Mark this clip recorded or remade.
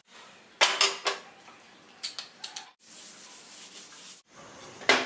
recorded